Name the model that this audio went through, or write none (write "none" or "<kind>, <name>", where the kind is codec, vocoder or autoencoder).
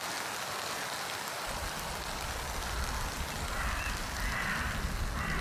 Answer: none